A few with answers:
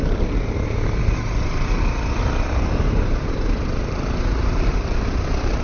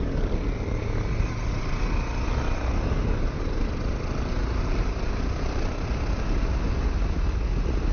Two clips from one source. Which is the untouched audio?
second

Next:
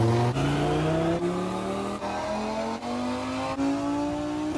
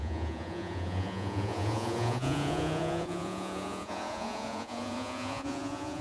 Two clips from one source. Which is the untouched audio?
first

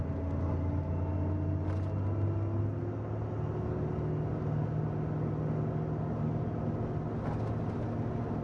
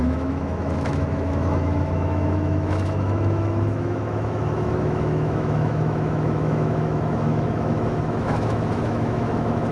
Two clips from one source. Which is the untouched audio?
first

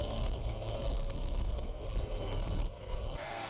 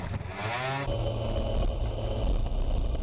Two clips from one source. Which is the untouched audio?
second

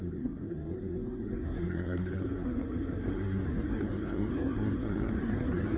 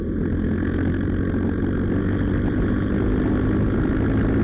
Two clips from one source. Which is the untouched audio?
second